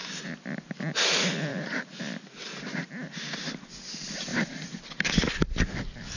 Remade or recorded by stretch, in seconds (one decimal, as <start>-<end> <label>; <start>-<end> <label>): 0.0-1.5 recorded; 1.5-2.9 remade; 2.9-4.3 recorded; 4.3-4.8 remade; 4.8-6.2 recorded